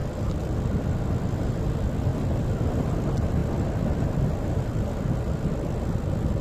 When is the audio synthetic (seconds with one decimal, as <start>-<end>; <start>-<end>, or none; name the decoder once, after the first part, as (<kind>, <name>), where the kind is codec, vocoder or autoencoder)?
none